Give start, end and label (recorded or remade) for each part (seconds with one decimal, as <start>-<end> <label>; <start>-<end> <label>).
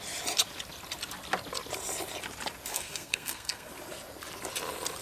0.0-2.7 recorded; 2.7-3.7 remade; 3.7-5.0 recorded